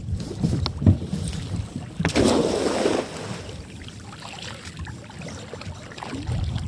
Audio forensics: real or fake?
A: real